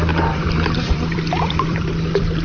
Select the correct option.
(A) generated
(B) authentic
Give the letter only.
A